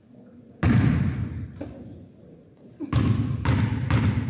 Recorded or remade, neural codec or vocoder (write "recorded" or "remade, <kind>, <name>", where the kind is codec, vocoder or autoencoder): recorded